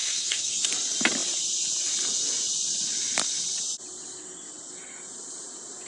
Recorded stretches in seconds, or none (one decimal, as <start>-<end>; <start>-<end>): 0.7-5.9